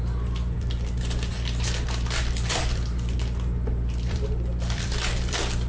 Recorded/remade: remade